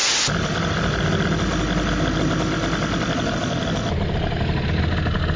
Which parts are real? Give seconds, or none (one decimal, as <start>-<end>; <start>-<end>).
0.0-5.4